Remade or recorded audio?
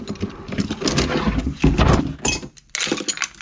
recorded